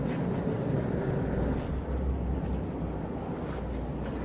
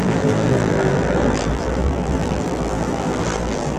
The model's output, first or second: second